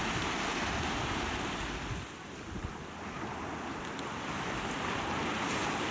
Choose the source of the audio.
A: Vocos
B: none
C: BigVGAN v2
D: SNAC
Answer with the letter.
B